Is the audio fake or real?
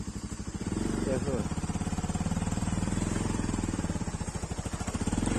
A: fake